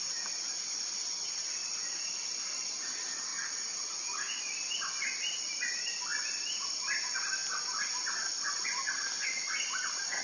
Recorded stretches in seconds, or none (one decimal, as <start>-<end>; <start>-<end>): 0.0-3.3; 4.4-10.2